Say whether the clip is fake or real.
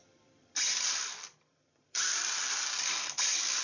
fake